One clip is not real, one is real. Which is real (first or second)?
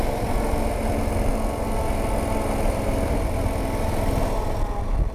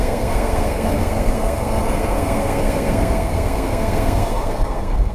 first